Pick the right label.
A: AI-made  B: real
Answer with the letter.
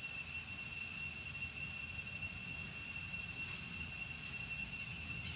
B